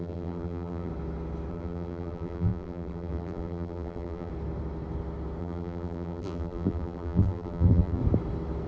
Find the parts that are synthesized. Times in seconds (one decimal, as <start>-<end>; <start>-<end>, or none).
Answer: 0.0-0.9; 1.5-4.3; 5.4-8.0